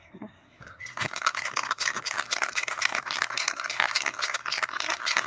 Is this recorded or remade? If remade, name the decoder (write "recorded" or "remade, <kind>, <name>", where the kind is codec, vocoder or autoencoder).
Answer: remade, codec, SNAC